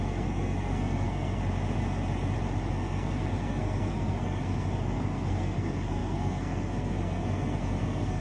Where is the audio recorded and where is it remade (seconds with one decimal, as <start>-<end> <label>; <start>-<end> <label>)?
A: 0.0-1.4 remade; 1.4-2.7 recorded; 2.7-8.2 remade

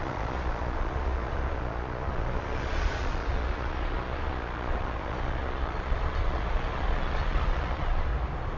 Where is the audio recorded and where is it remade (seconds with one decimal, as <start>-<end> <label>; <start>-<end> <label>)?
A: 0.0-8.1 remade; 8.1-8.6 recorded

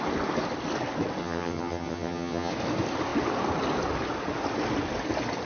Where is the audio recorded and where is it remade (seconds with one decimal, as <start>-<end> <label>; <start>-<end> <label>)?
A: 0.0-1.2 recorded; 1.2-2.5 remade; 2.5-5.5 recorded

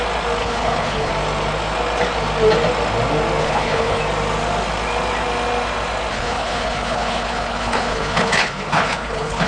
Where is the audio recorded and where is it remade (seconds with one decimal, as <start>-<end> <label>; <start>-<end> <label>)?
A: 0.0-0.4 recorded; 0.4-1.1 remade; 1.1-3.4 recorded; 3.4-4.0 remade; 4.0-6.1 recorded; 6.1-9.5 remade